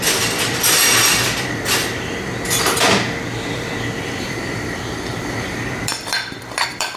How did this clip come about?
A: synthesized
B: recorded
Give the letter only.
A